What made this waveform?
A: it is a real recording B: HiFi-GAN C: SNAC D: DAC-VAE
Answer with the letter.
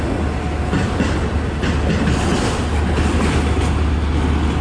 A